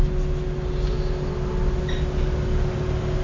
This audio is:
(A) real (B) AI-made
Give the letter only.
A